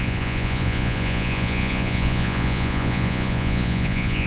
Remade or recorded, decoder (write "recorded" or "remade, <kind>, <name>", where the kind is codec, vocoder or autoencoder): remade, vocoder, Vocos